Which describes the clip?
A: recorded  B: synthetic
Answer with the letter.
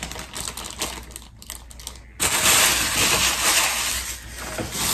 A